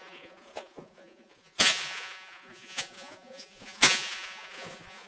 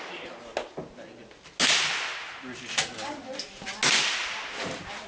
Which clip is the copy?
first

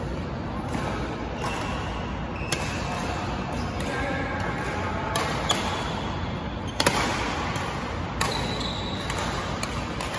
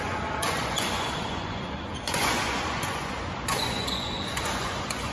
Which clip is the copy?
second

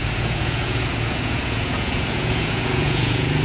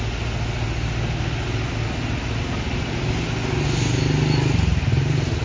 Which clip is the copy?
first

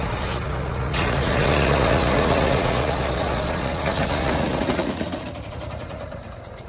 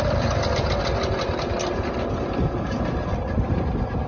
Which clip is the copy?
first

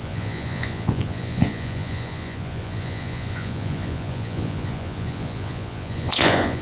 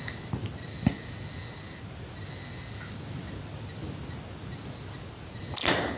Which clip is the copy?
first